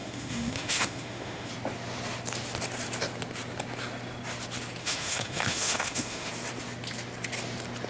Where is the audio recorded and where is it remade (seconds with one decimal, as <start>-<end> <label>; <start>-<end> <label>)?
0.0-1.5 remade; 1.5-4.8 recorded; 4.8-6.3 remade; 6.3-7.9 recorded